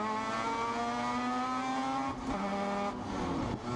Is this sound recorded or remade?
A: recorded